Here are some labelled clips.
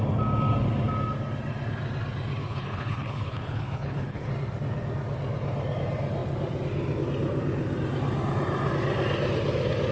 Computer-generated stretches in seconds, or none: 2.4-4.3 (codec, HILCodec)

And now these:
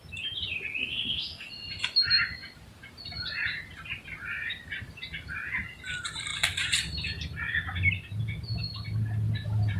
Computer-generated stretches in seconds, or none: 0.8-1.5 (codec, SNAC)

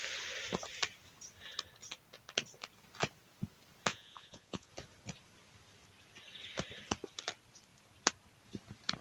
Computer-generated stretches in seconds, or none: 3.9-4.7 (vocoder, Vocos)

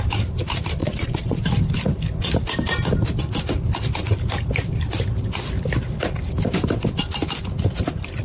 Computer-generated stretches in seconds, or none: 0.8-1.4 (vocoder, Vocos)

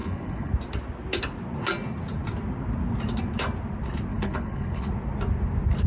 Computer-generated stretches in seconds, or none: 0.0-0.5 (codec, HILCodec); 4.1-4.9

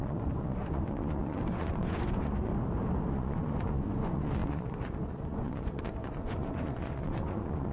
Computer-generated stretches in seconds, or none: 0.0-2.5 (vocoder, Vocos); 3.1-7.7